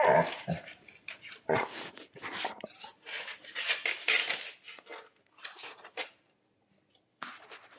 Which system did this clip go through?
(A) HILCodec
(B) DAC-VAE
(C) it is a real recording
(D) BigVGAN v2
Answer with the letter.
C